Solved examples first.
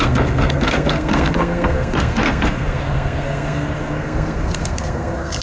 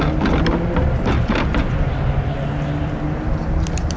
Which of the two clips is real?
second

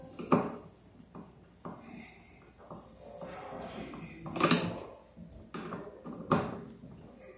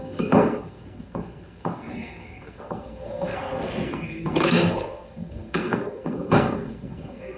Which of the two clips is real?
first